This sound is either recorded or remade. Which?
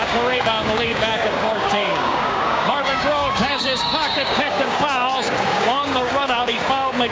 remade